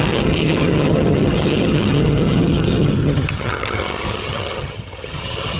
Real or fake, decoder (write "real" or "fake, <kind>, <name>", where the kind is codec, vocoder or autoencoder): fake, vocoder, HiFi-GAN